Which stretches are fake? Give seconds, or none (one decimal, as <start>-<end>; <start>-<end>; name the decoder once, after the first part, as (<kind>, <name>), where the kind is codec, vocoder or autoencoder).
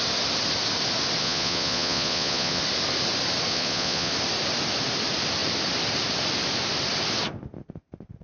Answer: 1.2-2.6 (vocoder, Vocos); 3.5-4.1